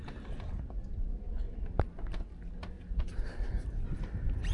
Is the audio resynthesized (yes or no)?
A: no